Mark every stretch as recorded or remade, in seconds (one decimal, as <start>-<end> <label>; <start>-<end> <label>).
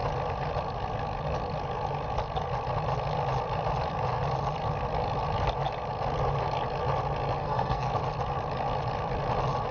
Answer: 0.0-7.4 recorded; 7.4-7.9 remade; 7.9-9.7 recorded